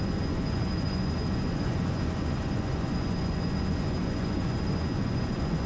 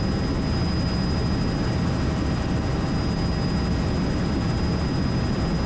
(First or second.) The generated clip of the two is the first